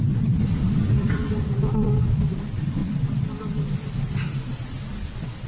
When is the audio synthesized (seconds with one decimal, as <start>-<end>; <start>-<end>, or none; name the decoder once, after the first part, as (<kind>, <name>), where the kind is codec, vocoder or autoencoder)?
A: 0.0-1.2 (vocoder, BigVGAN v2); 2.3-2.8; 3.9-5.5